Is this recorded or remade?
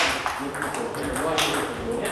recorded